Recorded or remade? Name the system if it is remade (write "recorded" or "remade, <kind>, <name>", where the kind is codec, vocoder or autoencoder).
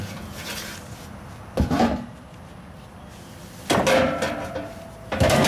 recorded